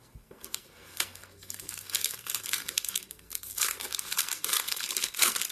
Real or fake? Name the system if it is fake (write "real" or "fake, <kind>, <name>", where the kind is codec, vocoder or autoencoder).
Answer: fake, codec, SNAC